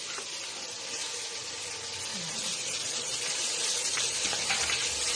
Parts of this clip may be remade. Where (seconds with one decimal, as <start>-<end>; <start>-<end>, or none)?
1.0-1.7; 2.1-3.5